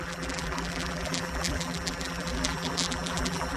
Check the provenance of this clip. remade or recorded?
remade